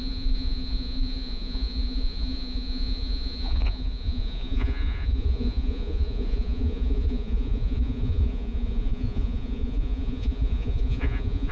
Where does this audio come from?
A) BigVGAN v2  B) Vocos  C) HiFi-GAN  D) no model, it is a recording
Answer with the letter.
B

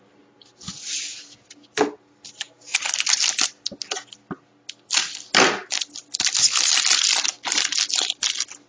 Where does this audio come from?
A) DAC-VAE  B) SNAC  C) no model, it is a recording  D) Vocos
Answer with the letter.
C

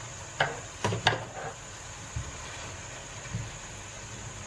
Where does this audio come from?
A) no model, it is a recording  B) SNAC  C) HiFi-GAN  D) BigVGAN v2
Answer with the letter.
A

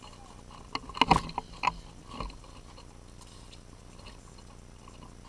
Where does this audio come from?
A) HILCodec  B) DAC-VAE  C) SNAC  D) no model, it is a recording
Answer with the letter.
D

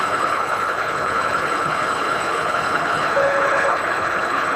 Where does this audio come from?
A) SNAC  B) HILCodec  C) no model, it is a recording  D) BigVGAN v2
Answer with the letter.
B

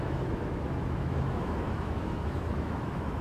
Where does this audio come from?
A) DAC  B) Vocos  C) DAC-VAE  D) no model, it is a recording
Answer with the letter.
C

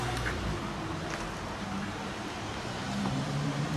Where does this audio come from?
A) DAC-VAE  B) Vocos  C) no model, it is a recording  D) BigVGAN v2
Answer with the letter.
D